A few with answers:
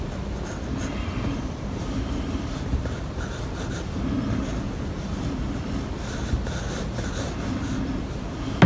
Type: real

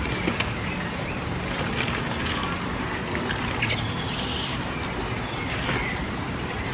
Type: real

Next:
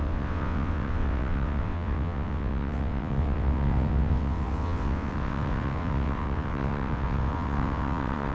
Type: fake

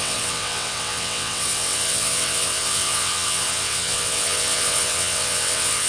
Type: fake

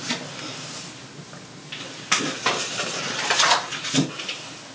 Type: real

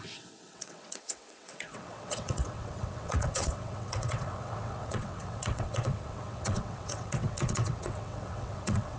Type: fake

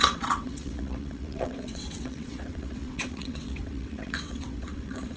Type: fake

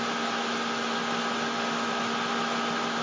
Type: real